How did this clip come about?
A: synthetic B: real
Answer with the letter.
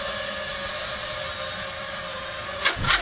B